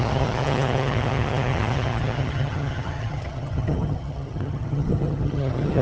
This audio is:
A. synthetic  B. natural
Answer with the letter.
A